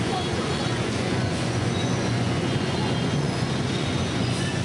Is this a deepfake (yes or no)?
yes